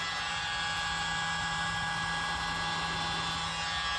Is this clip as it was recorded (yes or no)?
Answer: yes